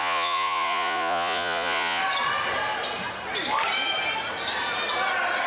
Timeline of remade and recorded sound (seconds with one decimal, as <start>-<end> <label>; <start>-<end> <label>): 0.0-2.0 remade; 2.0-5.5 recorded

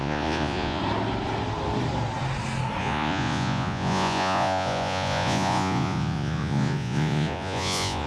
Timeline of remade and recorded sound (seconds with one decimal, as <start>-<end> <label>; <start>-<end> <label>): 0.0-0.8 remade; 0.8-2.8 recorded; 2.8-8.1 remade